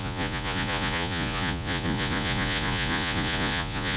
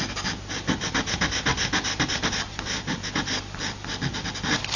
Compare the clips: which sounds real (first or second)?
second